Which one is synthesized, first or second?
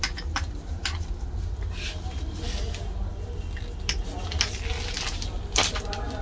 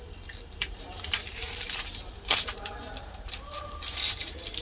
second